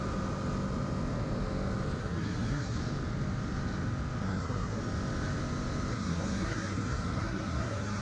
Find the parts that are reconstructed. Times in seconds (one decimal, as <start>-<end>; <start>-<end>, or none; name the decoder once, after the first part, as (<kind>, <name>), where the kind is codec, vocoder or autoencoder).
2.0-2.8 (codec, SNAC); 4.2-4.8; 5.9-8.0